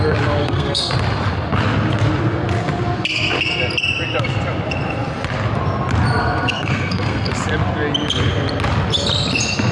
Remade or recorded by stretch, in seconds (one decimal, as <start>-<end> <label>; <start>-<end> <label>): 0.0-0.4 recorded; 0.4-0.9 remade; 0.9-6.2 recorded; 6.2-7.3 remade; 7.3-9.7 recorded